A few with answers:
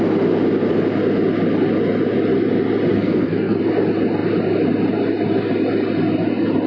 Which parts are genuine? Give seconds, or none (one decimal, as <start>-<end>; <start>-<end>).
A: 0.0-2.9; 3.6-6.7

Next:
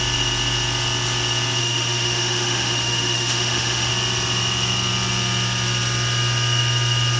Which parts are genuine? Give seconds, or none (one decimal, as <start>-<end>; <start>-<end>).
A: 0.0-1.6; 3.9-7.2

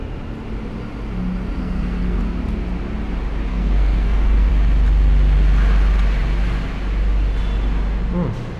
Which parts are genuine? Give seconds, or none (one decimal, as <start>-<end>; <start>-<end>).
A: 0.0-1.6; 2.2-3.5; 4.5-8.6